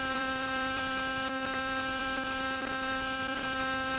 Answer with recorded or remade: remade